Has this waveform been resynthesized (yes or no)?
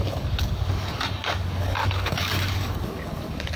yes